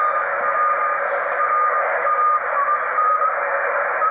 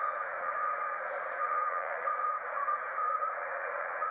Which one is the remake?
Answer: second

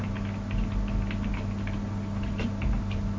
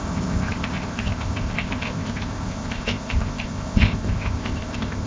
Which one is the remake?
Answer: second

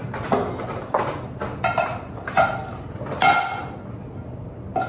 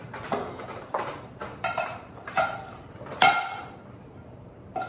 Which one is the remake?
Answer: second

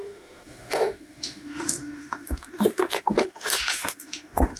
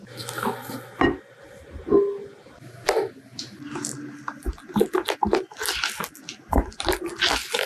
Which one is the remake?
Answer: first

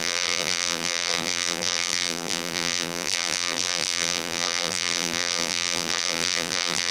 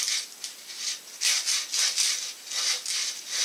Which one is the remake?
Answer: first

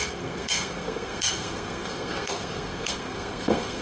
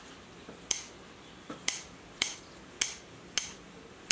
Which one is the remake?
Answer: first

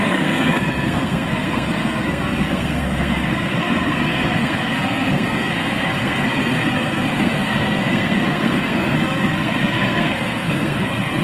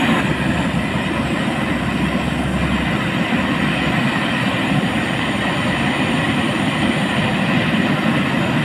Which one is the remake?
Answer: first